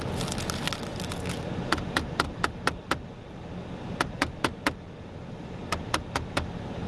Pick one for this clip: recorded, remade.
recorded